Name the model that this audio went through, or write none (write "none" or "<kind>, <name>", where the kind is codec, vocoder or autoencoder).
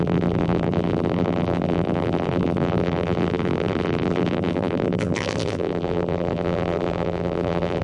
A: vocoder, BigVGAN v2